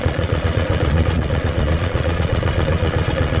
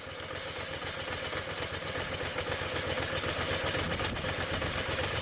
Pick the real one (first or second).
second